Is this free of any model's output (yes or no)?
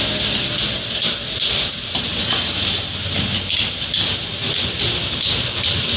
yes